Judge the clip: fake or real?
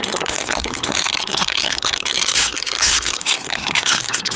fake